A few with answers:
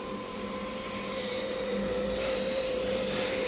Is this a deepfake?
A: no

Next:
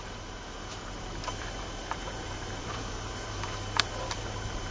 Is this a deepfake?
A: yes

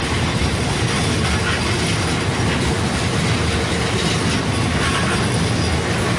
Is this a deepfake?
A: no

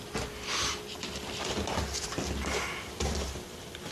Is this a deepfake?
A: no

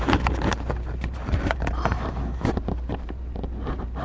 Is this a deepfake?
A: yes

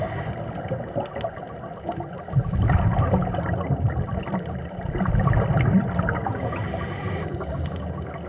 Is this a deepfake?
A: no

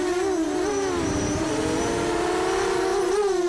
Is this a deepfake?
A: yes